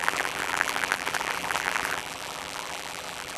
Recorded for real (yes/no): no